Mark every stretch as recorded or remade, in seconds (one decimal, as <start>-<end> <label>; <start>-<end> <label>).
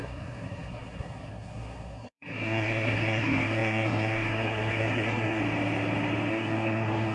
0.0-5.4 remade; 5.4-6.3 recorded; 6.3-7.1 remade